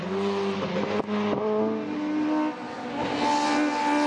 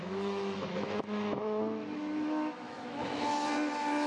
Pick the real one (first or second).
first